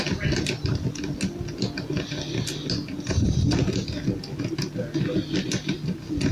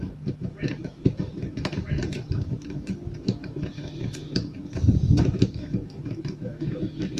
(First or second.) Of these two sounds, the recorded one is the first